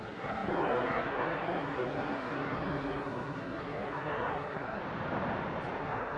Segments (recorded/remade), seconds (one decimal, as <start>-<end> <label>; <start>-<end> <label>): 0.0-4.8 remade; 4.8-5.8 recorded; 5.8-6.2 remade